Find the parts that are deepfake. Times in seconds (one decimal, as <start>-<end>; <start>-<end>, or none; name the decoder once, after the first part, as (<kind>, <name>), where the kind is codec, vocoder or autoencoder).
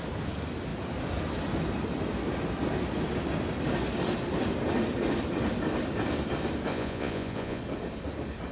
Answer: 6.7-7.6 (vocoder, Vocos)